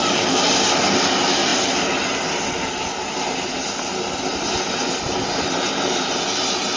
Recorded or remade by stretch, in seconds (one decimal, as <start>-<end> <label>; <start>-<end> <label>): 0.0-6.8 recorded